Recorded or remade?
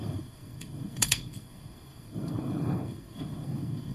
remade